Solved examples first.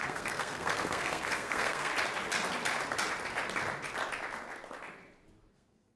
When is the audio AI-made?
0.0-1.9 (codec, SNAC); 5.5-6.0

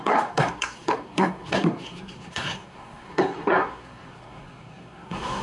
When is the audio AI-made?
0.0-5.4 (codec, SNAC)